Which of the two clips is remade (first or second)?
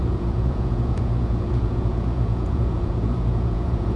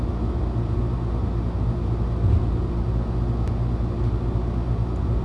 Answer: first